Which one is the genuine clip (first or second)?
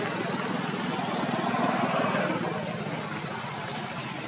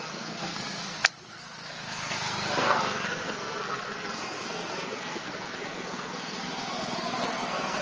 first